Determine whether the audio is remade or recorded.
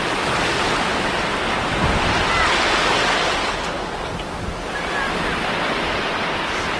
recorded